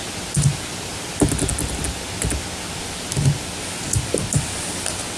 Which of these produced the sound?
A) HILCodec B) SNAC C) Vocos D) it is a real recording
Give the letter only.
D